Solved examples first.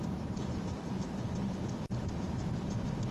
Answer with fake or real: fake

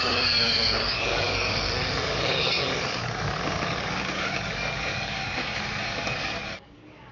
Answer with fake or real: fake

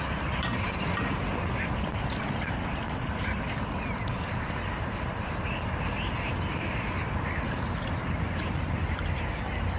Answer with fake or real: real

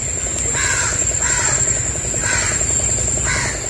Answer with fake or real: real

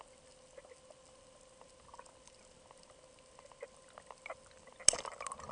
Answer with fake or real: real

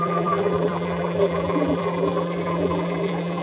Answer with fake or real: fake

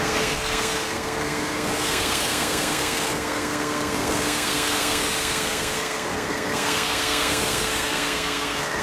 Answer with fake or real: fake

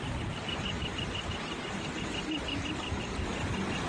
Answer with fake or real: real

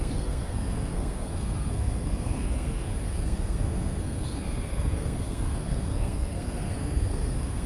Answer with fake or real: fake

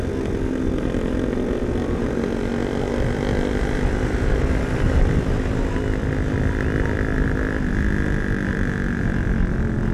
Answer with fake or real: real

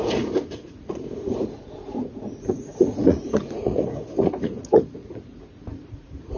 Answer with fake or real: fake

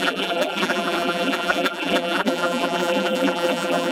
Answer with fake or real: fake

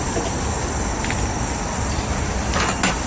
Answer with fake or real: real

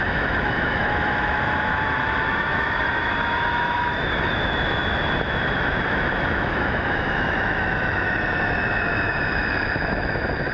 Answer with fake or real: fake